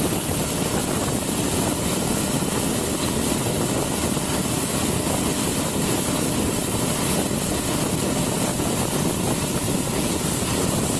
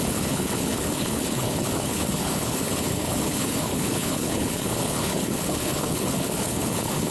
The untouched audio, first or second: first